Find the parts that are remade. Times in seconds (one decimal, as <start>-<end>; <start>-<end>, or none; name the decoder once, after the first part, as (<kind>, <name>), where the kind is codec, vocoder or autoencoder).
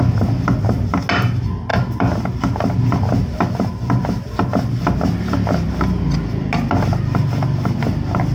none